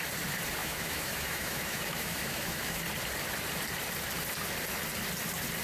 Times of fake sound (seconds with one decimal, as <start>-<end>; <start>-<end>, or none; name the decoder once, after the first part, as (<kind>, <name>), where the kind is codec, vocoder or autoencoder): 0.6-2.8 (autoencoder, DAC-VAE)